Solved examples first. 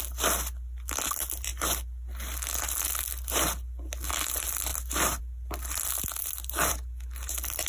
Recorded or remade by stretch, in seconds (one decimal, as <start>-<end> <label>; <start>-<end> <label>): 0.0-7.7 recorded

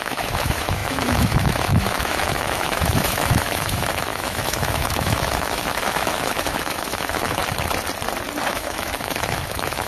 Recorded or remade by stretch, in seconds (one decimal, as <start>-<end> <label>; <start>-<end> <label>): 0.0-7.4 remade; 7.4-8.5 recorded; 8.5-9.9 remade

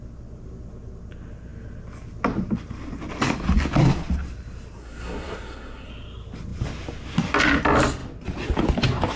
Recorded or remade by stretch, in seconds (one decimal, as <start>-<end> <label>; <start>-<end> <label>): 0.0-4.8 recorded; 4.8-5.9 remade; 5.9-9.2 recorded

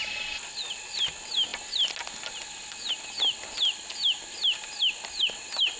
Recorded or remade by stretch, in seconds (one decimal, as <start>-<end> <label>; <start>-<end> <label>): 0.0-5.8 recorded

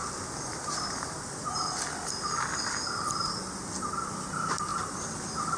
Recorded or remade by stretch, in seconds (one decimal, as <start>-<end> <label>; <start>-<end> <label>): 0.0-5.6 recorded